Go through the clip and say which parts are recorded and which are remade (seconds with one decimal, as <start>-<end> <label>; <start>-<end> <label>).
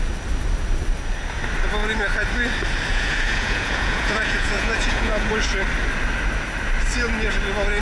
0.0-2.9 recorded; 2.9-5.3 remade; 5.3-7.8 recorded